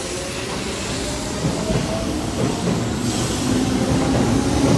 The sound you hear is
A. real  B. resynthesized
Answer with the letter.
A